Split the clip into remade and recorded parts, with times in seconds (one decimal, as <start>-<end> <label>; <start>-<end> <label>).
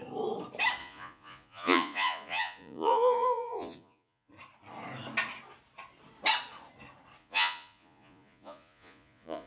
0.0-0.8 recorded; 0.8-4.3 remade; 4.3-7.2 recorded; 7.2-9.5 remade